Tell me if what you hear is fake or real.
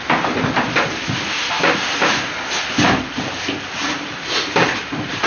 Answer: real